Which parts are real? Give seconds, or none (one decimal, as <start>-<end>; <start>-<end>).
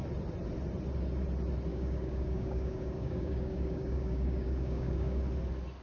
0.0-1.7; 5.2-5.8